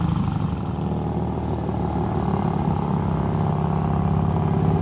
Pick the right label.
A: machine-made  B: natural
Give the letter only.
B